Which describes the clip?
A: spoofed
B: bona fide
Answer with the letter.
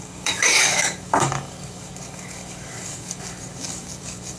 A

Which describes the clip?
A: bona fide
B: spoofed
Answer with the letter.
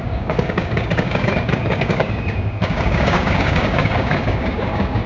B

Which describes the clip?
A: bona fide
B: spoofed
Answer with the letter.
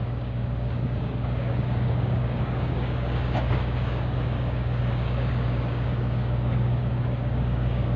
B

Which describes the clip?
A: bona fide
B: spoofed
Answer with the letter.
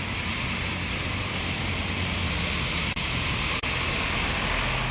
A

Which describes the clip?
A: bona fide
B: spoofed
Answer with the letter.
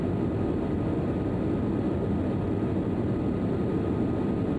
A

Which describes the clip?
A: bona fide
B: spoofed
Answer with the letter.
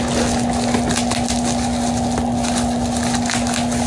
A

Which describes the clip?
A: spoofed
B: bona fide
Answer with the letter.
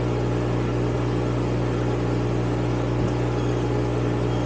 B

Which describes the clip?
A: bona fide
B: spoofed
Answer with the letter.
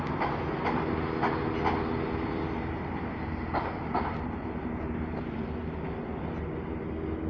A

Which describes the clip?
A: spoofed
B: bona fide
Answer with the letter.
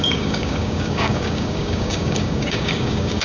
A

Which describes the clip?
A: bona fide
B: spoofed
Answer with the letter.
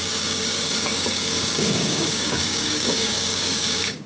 B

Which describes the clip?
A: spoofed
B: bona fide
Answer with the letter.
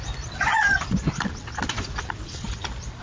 B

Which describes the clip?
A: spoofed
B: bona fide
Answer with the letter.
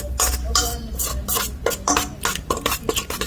B